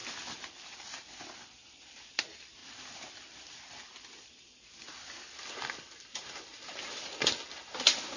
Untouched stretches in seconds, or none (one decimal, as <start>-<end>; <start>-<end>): 2.1-2.6; 6.6-8.2